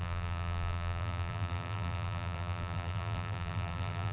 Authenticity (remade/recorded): remade